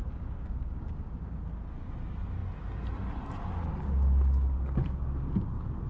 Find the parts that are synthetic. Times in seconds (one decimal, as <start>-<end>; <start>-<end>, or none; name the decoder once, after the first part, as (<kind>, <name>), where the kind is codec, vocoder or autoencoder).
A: 0.0-1.4 (codec, DAC)